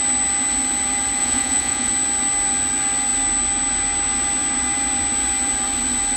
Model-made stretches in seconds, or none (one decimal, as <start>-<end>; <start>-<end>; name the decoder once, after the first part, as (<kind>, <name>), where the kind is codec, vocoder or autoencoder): 1.2-1.9 (vocoder, Vocos)